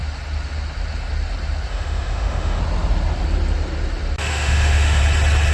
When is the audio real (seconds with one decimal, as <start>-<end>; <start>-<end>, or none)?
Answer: 0.0-1.7; 2.6-4.3; 5.0-5.5